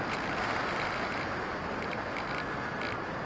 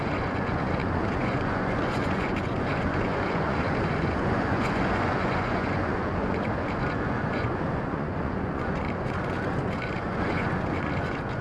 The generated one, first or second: second